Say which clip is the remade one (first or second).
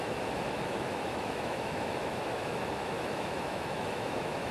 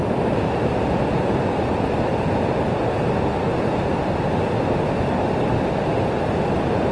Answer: first